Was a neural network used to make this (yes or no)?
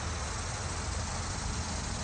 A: no